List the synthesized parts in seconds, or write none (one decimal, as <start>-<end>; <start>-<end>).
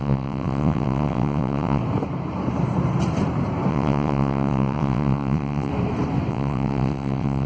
0.0-1.8; 3.7-5.7; 6.3-7.5